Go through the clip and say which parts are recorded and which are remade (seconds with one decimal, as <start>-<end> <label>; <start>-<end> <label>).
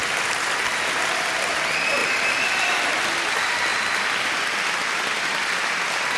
0.0-6.2 recorded